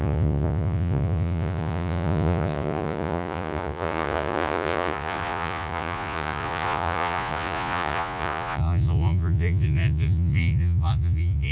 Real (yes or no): no